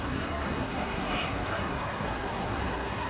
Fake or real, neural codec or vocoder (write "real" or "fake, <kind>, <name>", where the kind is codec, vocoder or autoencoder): fake, codec, SNAC